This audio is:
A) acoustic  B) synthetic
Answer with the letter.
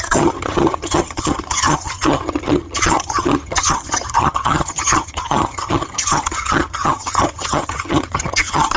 B